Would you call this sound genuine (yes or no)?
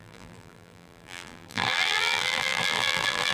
no